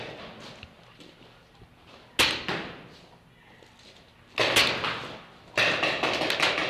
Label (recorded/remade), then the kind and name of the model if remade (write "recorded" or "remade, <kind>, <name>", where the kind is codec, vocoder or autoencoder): recorded